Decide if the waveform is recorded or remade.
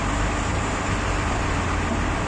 recorded